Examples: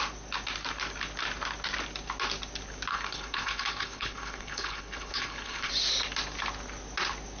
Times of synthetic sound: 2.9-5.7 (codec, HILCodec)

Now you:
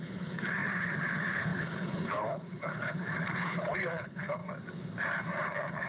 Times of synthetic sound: 0.0-4.4 (codec, HILCodec); 5.4-5.9

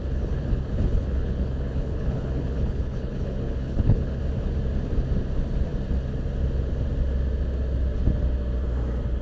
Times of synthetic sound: 0.0-4.2 (codec, HILCodec)

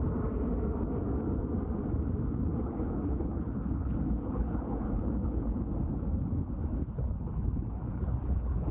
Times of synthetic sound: 2.6-5.6 (codec, HILCodec); 6.8-8.7

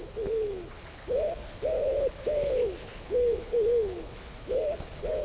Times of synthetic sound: 0.0-5.2 (codec, HILCodec)

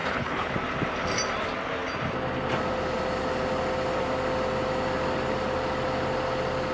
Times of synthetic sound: 0.0-0.5 (codec, HILCodec)